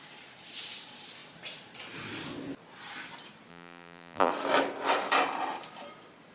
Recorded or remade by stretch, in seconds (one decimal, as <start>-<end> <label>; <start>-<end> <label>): 0.0-3.5 recorded; 3.5-4.3 remade; 4.3-6.3 recorded